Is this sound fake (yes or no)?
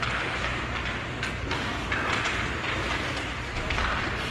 no